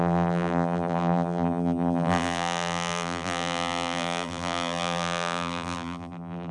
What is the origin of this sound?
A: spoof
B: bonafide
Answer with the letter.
A